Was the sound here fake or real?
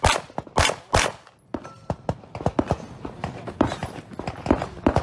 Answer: real